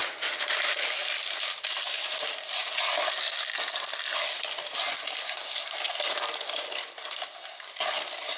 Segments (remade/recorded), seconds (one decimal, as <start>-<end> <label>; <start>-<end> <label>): 0.0-2.6 remade; 2.6-8.4 recorded